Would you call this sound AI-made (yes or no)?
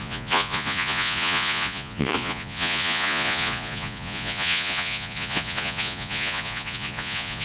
yes